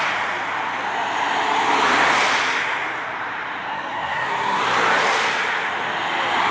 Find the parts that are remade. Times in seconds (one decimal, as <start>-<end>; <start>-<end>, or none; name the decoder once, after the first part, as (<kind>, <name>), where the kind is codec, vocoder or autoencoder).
3.7-4.6 (codec, SNAC)